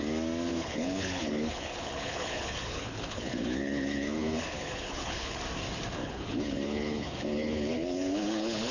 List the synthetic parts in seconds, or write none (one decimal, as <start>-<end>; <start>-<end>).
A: 0.5-5.4; 6.0-8.7

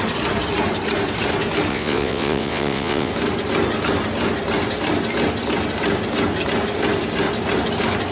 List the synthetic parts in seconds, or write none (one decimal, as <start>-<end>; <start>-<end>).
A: 1.7-3.1

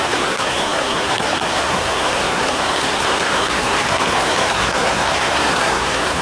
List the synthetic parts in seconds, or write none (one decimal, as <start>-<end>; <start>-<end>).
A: 0.0-6.2

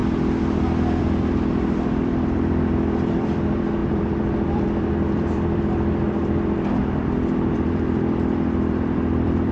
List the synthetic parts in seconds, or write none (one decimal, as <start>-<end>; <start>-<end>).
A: 1.0-9.5